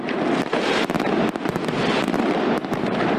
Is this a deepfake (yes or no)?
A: no